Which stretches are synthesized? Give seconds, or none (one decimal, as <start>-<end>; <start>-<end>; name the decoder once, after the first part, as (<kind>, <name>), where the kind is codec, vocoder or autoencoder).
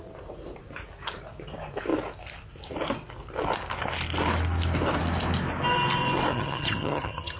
6.3-7.4 (vocoder, HiFi-GAN)